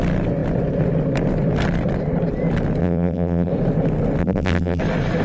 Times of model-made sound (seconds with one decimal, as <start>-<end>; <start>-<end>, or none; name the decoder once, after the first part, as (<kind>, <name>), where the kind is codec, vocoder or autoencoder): 2.8-3.5 (vocoder, BigVGAN v2); 4.2-4.8